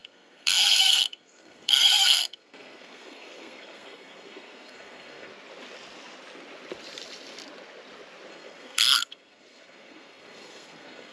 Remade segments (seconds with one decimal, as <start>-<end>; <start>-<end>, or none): 0.0-5.3; 8.3-11.1

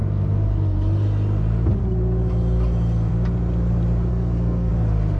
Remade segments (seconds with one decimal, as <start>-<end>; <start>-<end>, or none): 4.1-4.7

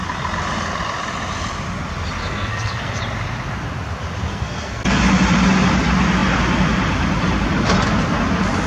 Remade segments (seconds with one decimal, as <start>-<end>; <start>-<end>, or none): 2.2-3.0; 4.3-5.0

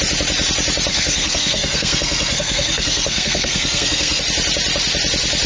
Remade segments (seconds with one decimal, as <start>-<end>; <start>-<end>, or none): 0.9-4.2

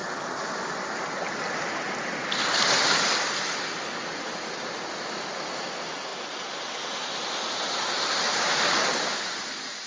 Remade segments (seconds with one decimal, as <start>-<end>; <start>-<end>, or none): none

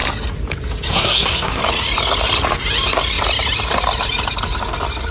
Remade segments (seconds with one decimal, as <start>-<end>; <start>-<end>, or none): 0.9-1.6

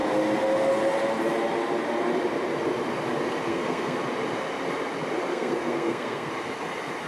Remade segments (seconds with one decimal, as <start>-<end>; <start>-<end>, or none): 3.5-4.0; 5.3-6.3

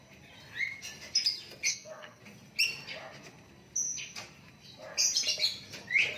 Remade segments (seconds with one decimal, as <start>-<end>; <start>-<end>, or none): 1.7-2.2